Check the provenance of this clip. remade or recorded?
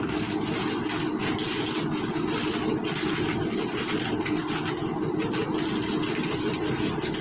recorded